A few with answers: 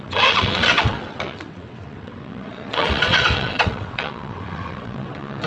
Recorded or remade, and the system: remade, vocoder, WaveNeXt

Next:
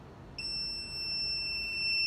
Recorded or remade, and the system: recorded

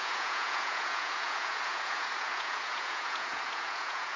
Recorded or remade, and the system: remade, vocoder, Vocos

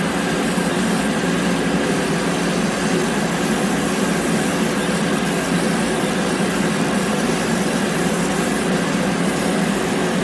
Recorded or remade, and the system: recorded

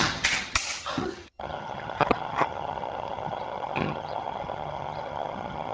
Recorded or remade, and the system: remade, vocoder, HiFi-GAN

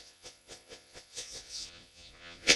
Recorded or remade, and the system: remade, vocoder, Vocos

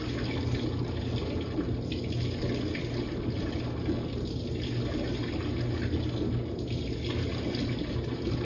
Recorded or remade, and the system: recorded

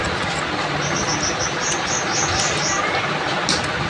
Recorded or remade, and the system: recorded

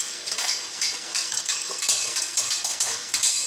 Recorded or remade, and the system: remade, codec, SNAC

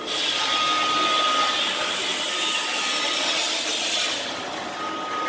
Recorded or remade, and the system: recorded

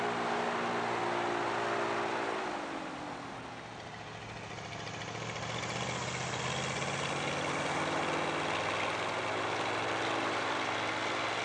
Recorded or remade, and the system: recorded